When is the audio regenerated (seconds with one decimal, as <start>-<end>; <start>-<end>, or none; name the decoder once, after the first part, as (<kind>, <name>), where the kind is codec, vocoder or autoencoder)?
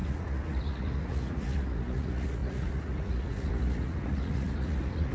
0.0-5.1 (vocoder, Vocos)